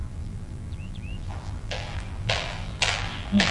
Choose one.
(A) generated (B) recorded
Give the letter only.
A